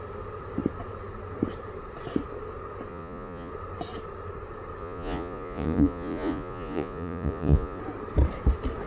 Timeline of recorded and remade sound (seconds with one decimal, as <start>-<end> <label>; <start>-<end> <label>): 0.0-2.9 recorded; 2.9-3.5 remade; 3.5-4.8 recorded; 4.8-7.8 remade; 7.8-8.9 recorded